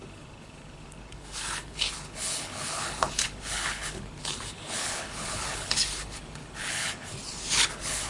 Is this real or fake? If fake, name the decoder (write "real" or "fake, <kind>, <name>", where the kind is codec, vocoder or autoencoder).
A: fake, codec, HILCodec